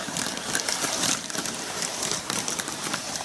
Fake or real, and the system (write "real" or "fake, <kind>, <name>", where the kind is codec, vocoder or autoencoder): fake, vocoder, BigVGAN v2